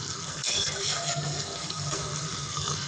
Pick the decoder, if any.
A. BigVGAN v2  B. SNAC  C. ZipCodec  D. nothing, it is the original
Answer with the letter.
B